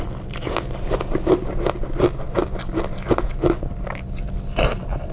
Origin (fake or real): real